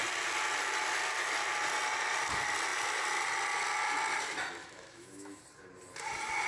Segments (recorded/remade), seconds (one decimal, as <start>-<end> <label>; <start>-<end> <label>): 0.0-4.6 recorded; 4.6-5.4 remade; 5.4-6.5 recorded